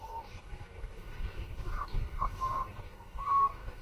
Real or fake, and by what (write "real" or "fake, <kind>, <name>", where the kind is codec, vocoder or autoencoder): fake, codec, DAC